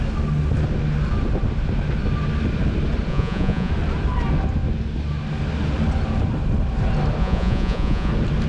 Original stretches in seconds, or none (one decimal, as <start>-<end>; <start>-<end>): 0.0-3.1; 3.7-7.2; 8.1-8.5